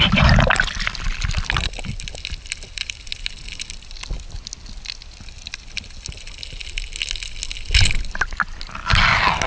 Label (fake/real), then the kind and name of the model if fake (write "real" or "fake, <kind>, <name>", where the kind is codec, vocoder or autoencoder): real